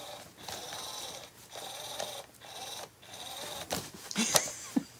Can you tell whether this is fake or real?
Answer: fake